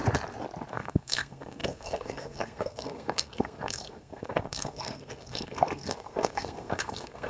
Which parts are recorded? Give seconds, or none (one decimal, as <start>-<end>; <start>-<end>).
0.0-0.7